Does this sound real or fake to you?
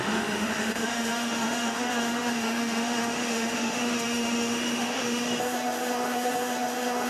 fake